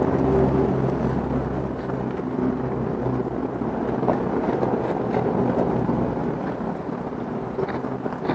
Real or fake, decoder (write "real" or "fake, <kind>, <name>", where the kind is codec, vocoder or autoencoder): real